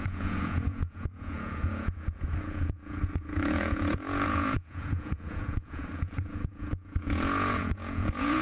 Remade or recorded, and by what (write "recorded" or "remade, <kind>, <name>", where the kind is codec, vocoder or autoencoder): remade, vocoder, Vocos